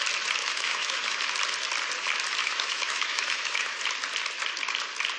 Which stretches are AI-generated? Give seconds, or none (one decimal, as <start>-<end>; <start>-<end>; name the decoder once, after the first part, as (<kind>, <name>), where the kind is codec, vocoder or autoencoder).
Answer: 0.4-1.2 (autoencoder, DAC-VAE); 2.4-3.8